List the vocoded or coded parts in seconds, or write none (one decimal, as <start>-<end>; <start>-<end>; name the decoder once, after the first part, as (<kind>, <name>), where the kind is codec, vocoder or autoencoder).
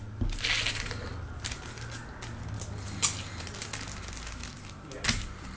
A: none